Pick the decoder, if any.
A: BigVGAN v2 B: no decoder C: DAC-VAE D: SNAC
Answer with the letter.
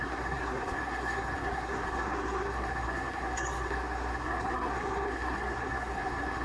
D